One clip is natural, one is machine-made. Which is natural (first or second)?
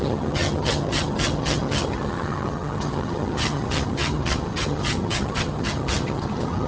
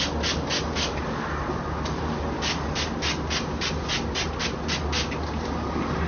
second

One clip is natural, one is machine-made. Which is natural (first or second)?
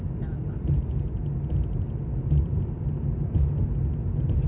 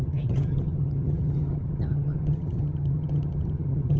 first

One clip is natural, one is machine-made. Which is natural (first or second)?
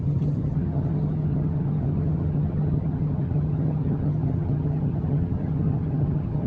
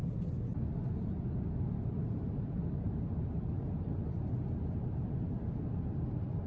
second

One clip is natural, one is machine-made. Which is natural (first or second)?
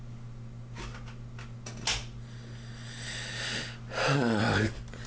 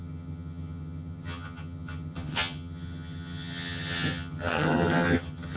first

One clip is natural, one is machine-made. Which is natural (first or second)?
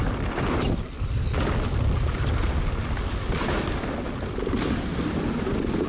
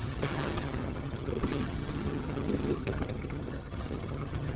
first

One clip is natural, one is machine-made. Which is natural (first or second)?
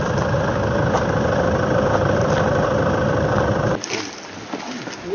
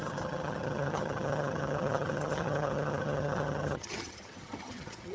first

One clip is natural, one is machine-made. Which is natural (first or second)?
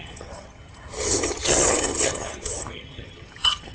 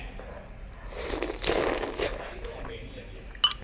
second